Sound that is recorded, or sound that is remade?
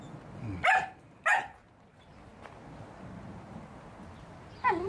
recorded